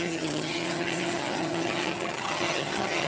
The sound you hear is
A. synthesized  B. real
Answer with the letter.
A